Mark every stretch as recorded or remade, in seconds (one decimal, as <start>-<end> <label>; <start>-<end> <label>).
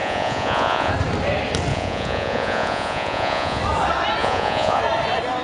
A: 0.0-0.9 remade; 0.9-1.7 recorded; 1.7-3.6 remade; 3.6-4.2 recorded; 4.2-4.8 remade; 4.8-5.4 recorded